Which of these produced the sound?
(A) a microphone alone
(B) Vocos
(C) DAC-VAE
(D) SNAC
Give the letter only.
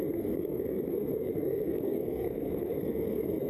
D